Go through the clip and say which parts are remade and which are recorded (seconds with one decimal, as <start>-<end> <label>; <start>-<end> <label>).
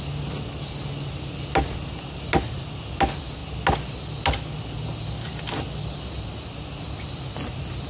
0.0-7.9 recorded